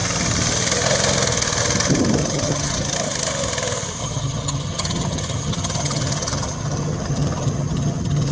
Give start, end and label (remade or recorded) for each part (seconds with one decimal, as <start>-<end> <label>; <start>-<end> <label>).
0.0-2.2 recorded; 2.2-2.9 remade; 2.9-4.0 recorded; 4.0-8.3 remade